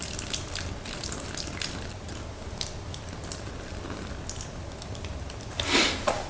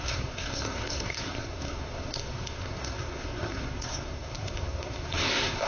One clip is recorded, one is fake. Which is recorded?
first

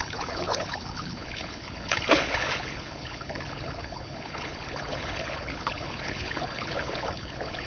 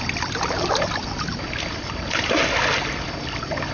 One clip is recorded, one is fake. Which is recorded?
second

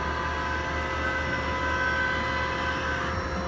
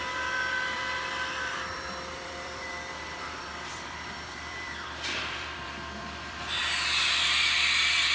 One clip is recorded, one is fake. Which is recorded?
first